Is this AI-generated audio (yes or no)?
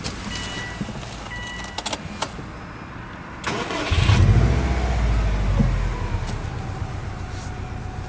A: no